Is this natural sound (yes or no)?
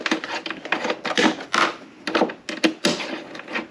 yes